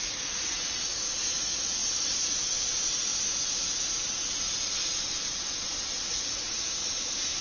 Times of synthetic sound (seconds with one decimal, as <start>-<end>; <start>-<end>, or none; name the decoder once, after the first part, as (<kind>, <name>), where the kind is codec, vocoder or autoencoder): 0.0-1.8 (vocoder, Vocos); 6.1-6.8